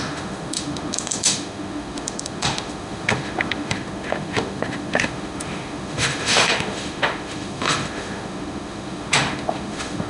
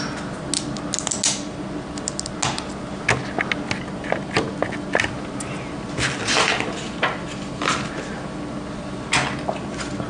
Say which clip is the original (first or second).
second